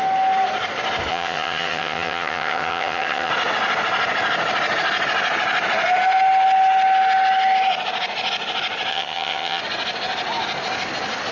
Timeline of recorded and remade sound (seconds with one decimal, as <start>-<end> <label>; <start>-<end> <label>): 0.0-1.1 recorded; 1.1-3.3 remade; 3.3-8.9 recorded; 8.9-9.6 remade; 9.6-11.3 recorded